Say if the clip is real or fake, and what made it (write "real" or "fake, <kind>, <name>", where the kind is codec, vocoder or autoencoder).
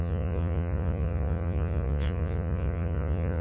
fake, vocoder, Vocos